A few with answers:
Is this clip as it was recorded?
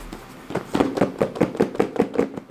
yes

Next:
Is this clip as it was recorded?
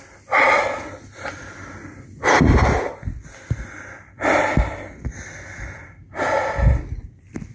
yes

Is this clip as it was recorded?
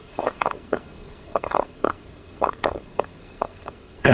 no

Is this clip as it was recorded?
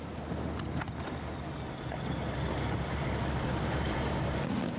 yes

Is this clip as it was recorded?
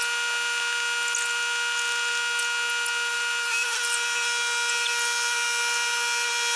yes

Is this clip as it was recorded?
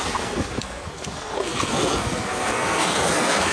no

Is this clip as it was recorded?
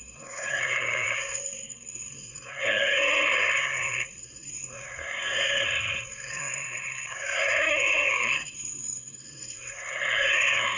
no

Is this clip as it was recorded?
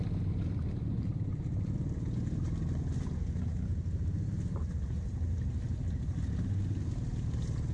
yes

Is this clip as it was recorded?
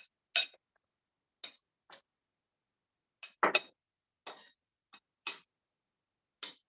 yes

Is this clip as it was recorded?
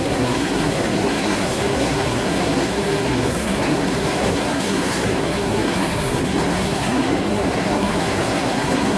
no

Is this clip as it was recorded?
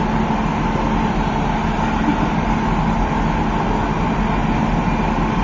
yes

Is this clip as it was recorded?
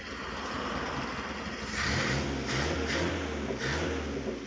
yes